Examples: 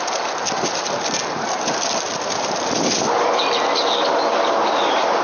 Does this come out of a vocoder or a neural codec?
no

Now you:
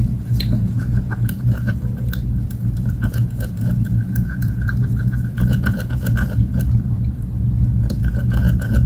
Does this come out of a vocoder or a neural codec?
yes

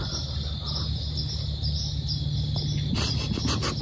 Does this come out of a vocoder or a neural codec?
no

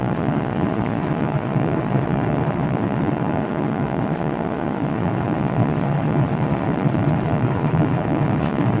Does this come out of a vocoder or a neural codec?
yes